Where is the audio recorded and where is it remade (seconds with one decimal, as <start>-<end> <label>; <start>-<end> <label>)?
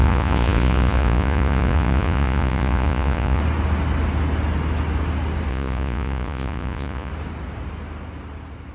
0.0-3.4 remade; 3.4-5.5 recorded; 5.5-7.1 remade; 7.1-8.7 recorded